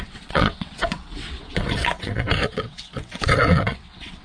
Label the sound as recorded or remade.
remade